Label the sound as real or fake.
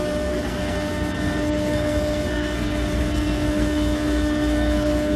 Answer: fake